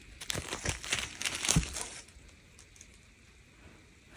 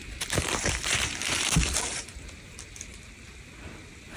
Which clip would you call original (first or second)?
first